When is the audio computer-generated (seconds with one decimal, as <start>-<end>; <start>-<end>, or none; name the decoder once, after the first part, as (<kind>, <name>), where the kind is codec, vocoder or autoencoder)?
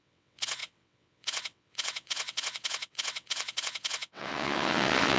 0.0-5.2 (vocoder, WaveNeXt)